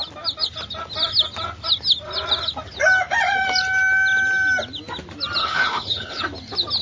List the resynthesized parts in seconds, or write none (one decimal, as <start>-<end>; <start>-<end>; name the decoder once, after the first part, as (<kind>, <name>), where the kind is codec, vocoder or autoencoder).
5.4-6.2 (codec, HILCodec)